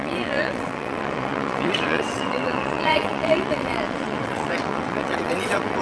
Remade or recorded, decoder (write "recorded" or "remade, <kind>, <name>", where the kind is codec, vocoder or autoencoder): remade, vocoder, WaveNeXt